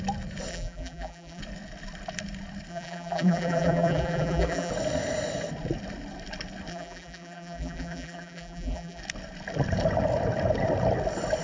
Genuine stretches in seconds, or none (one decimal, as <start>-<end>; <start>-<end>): 0.0-0.5; 1.4-2.7; 4.7-6.7; 9.0-11.4